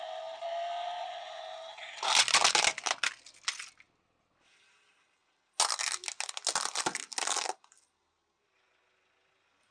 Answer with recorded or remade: recorded